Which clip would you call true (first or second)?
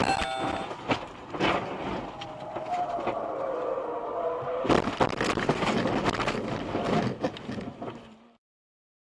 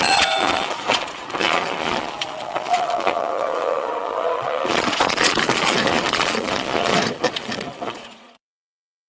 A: first